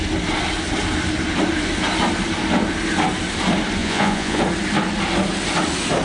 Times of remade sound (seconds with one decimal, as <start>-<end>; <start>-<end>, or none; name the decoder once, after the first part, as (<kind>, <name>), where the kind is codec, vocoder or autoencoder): 3.8-4.4 (vocoder, Vocos)